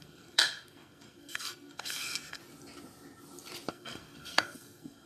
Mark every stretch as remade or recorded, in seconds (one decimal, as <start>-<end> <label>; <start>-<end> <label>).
0.0-2.4 remade; 2.4-3.7 recorded; 3.7-5.1 remade